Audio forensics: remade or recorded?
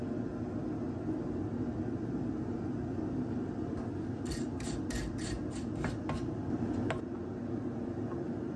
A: recorded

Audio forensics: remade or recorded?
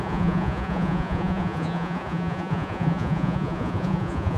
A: remade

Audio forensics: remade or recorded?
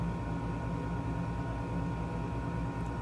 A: recorded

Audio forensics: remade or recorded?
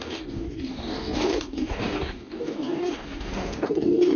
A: remade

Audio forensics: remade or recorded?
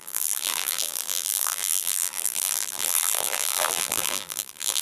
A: remade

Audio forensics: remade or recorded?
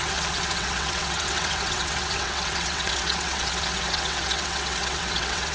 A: remade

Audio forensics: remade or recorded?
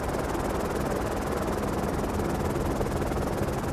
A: recorded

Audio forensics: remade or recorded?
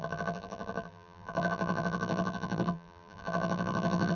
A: remade